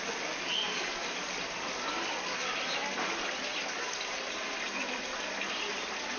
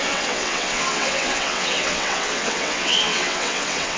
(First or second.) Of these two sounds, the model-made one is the second